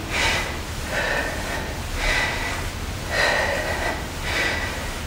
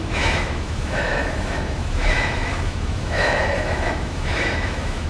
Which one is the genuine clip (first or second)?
first